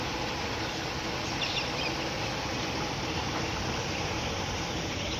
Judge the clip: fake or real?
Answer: real